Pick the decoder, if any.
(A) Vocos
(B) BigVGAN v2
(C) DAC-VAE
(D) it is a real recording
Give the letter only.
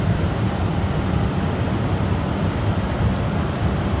B